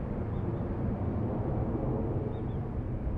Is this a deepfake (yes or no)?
no